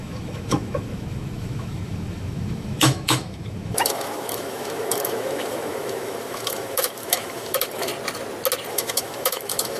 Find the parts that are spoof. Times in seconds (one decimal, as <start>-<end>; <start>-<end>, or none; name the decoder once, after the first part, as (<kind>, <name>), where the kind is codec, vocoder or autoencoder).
0.0-7.9 (autoencoder, DAC-VAE); 8.7-9.8